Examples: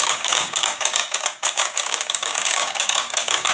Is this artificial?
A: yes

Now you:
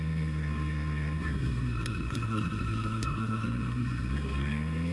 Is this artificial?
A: yes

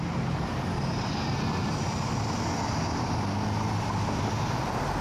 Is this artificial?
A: no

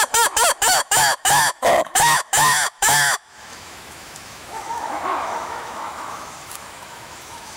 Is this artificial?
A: yes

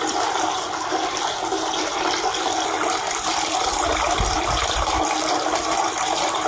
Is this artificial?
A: yes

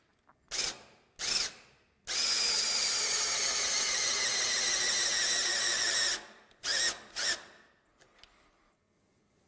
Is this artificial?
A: no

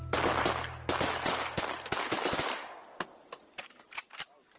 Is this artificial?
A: no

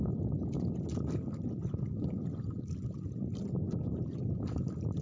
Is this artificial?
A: no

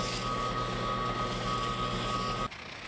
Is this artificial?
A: no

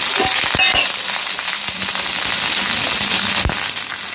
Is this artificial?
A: no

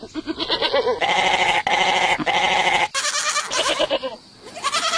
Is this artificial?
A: no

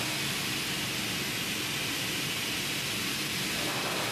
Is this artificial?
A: no